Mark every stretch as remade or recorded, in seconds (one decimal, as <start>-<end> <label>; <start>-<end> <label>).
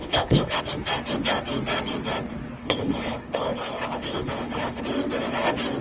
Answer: 0.0-0.6 remade; 0.6-2.6 recorded; 2.6-4.8 remade; 4.8-5.8 recorded